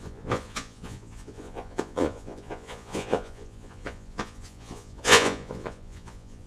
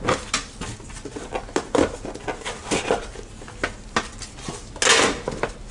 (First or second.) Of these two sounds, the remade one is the first